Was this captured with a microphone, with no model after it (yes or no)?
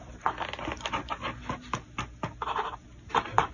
yes